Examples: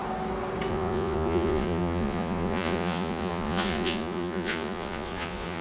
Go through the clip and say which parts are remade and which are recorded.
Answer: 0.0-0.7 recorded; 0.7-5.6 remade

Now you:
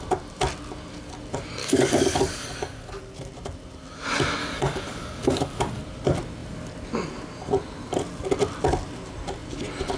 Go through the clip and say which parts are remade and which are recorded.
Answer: 0.0-1.6 recorded; 1.6-3.0 remade; 3.0-4.4 recorded; 4.4-5.8 remade; 5.8-10.0 recorded

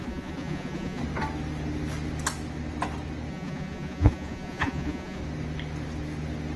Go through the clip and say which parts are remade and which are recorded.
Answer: 0.0-1.0 remade; 1.0-3.3 recorded; 3.3-5.2 remade; 5.2-6.6 recorded

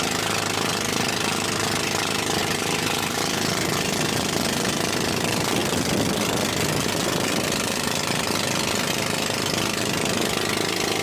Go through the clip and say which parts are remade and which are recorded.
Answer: 0.0-2.4 recorded; 2.4-3.2 remade; 3.2-11.0 recorded

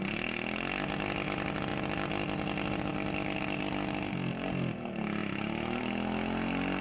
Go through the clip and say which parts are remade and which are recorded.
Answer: 0.0-6.8 recorded

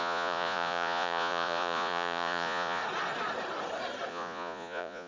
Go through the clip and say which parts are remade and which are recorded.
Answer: 0.0-2.8 remade; 2.8-4.1 recorded; 4.1-5.1 remade